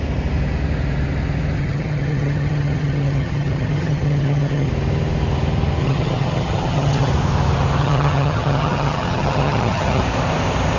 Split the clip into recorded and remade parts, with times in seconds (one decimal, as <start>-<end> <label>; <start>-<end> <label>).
0.0-1.6 recorded; 1.6-4.7 remade; 4.7-5.8 recorded; 5.8-7.1 remade; 7.1-7.8 recorded; 7.8-10.0 remade; 10.0-10.8 recorded